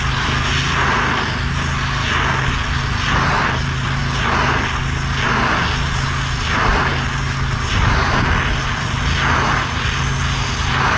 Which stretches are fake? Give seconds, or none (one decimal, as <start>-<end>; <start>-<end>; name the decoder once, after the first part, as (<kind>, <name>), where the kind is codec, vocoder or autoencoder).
none